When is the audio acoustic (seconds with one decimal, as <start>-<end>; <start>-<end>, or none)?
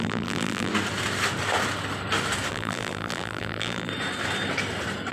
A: 0.7-2.5; 3.9-5.1